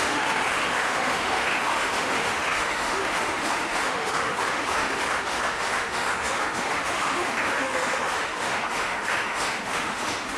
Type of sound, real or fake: fake